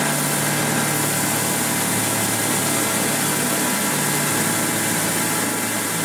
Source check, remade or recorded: recorded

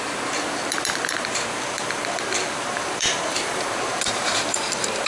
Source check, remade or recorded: remade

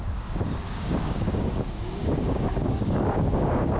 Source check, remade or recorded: remade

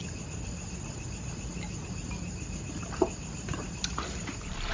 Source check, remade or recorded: recorded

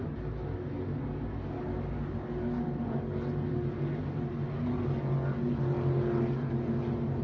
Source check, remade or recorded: recorded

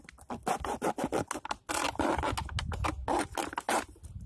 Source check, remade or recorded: recorded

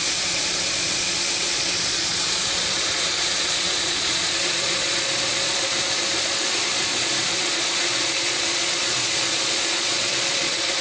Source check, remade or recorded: remade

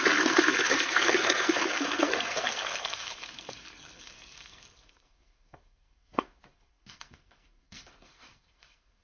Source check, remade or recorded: remade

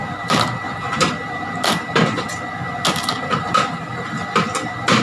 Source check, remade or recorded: recorded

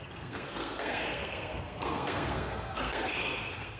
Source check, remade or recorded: remade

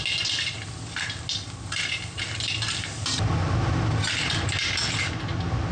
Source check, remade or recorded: recorded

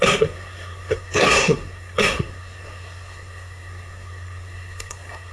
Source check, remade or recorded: remade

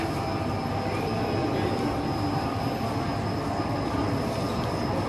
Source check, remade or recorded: recorded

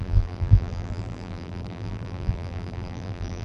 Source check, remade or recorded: remade